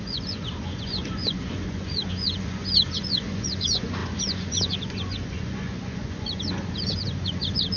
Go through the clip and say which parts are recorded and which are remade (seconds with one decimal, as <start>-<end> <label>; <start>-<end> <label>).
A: 0.0-7.8 remade